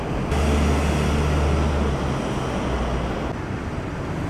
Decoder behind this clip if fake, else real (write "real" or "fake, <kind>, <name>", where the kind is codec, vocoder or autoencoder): real